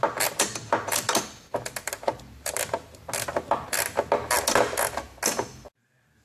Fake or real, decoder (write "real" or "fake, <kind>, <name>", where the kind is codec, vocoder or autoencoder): real